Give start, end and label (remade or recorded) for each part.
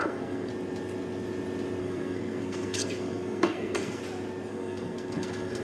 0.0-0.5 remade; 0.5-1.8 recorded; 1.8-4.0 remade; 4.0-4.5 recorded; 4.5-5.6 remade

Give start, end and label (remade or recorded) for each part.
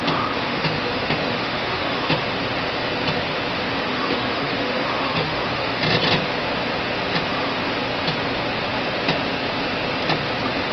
0.0-0.5 recorded; 0.5-2.2 remade; 2.2-3.9 recorded; 3.9-5.8 remade; 5.8-10.7 recorded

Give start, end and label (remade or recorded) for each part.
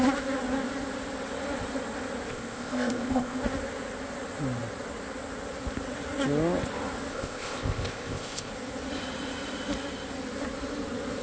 0.0-2.3 recorded; 2.3-3.4 remade; 3.4-7.1 recorded; 7.1-8.5 remade; 8.5-11.2 recorded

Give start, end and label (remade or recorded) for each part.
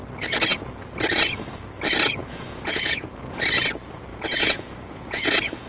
0.0-2.2 recorded; 2.2-3.4 remade; 3.4-4.1 recorded; 4.1-5.7 remade